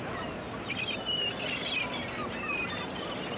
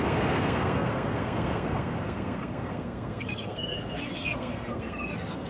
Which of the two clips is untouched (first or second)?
first